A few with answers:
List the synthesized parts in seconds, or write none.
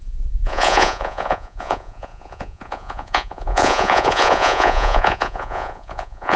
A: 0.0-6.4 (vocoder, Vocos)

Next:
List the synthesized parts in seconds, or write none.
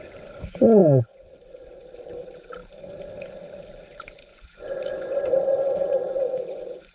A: 0.8-1.3 (vocoder, Vocos); 4.3-5.3; 5.8-6.9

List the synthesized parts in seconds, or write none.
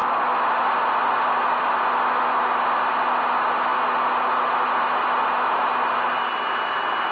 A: none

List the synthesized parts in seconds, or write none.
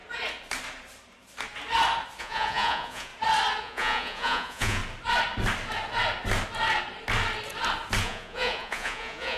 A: 2.2-3.1 (vocoder, Vocos); 3.6-4.8; 8.0-9.4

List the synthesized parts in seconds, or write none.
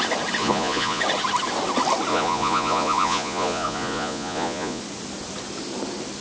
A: 0.4-1.0 (vocoder, Vocos); 2.1-4.8